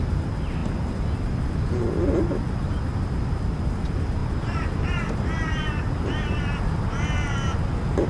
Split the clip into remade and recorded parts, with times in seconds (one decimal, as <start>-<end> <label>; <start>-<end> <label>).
0.0-4.2 recorded; 4.2-6.4 remade; 6.4-8.1 recorded